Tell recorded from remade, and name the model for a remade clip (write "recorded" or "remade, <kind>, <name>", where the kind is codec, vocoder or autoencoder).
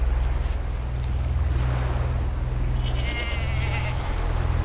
recorded